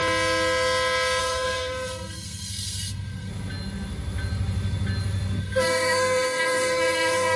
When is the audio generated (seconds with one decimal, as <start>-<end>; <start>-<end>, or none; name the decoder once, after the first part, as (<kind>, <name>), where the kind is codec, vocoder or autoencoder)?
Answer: 1.2-3.3 (codec, SNAC); 5.4-7.4

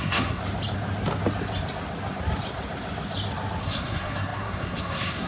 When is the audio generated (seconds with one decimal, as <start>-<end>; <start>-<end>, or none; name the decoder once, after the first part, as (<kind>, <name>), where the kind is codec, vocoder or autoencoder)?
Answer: 0.0-0.4 (codec, SNAC); 3.6-5.3

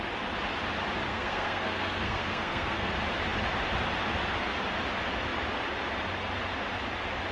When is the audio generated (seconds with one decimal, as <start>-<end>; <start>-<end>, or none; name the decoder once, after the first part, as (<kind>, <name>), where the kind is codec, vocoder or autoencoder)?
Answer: 1.1-2.9 (codec, SNAC)

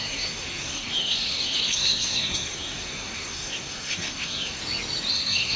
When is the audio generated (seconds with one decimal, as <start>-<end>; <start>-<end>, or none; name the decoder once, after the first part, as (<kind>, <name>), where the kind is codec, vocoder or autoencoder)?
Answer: 0.0-4.6 (codec, SNAC); 5.1-5.6

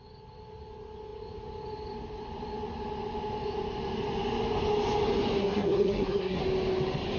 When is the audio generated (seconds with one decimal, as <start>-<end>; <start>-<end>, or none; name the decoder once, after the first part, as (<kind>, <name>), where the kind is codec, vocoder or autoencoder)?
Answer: 5.4-6.4 (codec, SNAC)

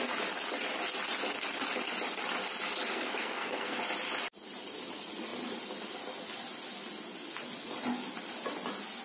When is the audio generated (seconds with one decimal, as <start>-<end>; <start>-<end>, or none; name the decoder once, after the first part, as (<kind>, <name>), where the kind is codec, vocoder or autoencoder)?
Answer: 2.9-3.8 (codec, SNAC)